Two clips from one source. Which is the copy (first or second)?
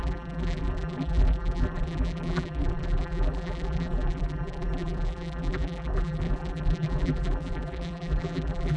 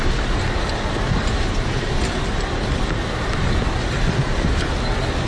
first